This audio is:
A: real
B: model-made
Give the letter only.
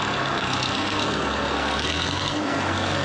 B